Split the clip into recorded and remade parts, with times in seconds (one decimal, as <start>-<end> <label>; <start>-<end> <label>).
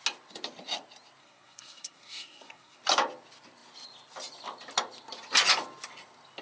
0.0-1.2 recorded; 1.2-2.8 remade; 2.8-6.4 recorded